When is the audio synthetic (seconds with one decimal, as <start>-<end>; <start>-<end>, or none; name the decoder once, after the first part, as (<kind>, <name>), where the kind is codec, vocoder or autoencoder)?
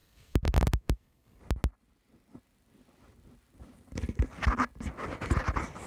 0.0-1.4 (codec, SNAC)